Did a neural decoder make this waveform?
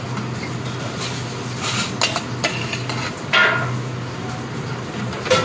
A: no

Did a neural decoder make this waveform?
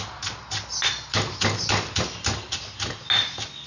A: no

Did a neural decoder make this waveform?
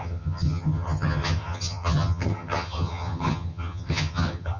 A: yes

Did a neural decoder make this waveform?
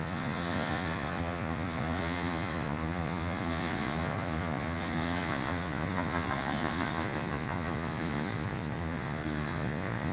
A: yes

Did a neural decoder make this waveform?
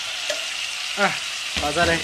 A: no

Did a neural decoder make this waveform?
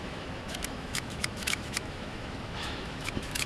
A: yes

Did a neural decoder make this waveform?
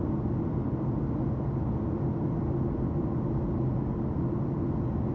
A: no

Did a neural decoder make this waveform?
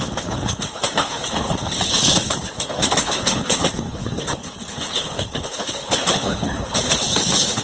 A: yes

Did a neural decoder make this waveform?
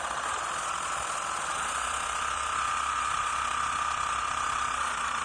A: yes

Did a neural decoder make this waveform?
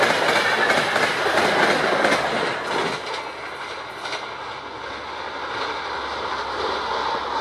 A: no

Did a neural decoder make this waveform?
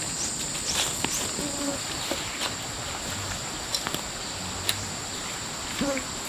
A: no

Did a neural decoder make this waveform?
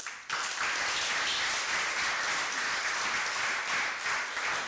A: no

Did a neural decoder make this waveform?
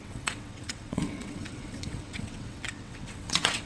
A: yes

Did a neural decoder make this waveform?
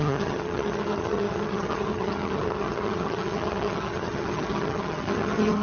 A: yes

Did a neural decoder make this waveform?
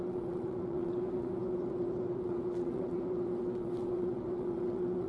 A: yes